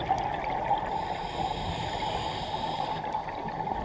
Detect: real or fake real